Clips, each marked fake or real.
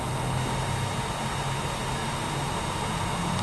real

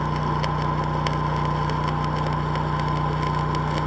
real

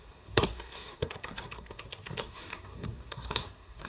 fake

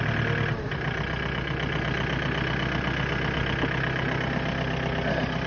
real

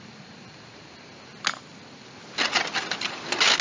real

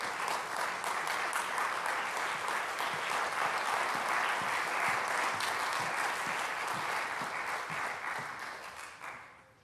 real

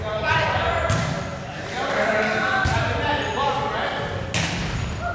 real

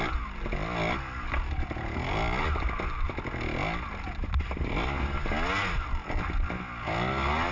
real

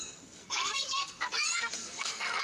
fake